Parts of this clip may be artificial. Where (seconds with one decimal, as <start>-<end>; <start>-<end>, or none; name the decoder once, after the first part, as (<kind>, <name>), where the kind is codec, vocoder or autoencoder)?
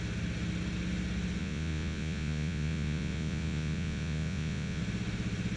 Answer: 1.4-4.8 (vocoder, Vocos)